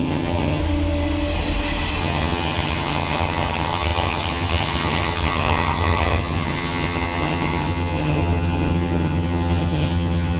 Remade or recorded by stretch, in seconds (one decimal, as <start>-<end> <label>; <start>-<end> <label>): 0.0-0.6 remade; 0.6-2.0 recorded; 2.0-10.4 remade